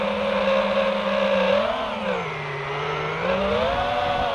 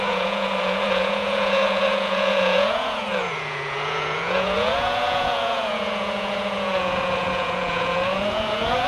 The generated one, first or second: second